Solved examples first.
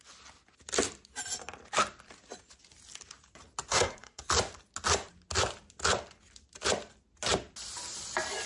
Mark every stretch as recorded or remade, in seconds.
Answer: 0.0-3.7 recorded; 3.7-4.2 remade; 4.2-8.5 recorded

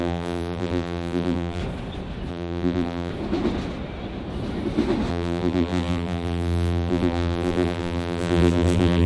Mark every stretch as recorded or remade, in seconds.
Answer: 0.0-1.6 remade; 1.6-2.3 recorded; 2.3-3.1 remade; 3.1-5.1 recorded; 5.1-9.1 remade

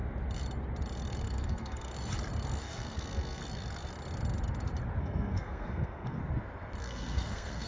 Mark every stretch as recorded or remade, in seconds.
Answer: 0.0-1.2 recorded; 1.2-1.9 remade; 1.9-2.6 recorded; 2.6-3.4 remade; 3.4-5.0 recorded; 5.0-6.2 remade; 6.2-6.8 recorded; 6.8-7.7 remade